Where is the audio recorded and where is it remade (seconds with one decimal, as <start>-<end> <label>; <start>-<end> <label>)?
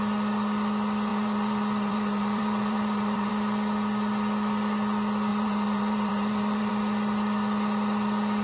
0.0-1.1 recorded; 1.1-3.3 remade; 3.3-5.3 recorded; 5.3-6.7 remade; 6.7-8.4 recorded